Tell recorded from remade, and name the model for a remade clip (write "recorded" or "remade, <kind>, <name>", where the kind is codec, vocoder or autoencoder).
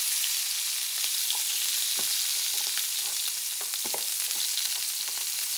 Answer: recorded